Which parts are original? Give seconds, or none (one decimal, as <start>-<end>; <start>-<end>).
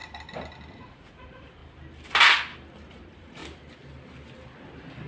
0.0-0.7; 1.6-2.9; 3.4-5.1